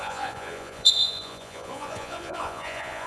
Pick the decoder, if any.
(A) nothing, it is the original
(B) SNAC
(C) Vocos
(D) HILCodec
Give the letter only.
C